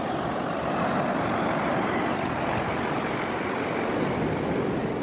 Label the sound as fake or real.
real